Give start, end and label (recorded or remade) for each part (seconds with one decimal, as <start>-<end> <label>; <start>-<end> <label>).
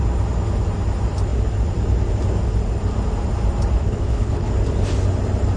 0.0-3.8 recorded; 3.8-4.5 remade; 4.5-5.6 recorded